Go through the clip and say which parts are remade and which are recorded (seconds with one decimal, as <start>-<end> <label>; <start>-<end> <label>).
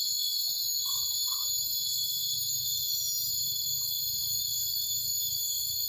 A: 0.0-5.9 recorded